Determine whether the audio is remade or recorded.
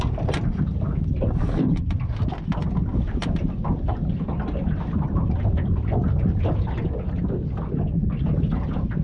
recorded